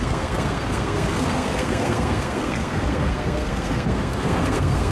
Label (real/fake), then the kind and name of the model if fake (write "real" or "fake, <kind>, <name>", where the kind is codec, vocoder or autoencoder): fake, codec, SNAC